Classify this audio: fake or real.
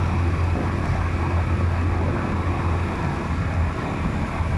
real